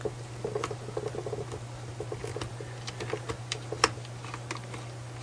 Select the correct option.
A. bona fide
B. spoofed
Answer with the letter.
A